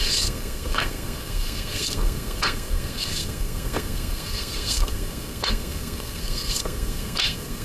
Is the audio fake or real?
fake